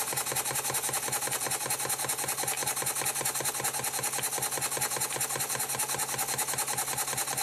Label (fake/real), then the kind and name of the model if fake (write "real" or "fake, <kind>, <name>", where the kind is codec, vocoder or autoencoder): real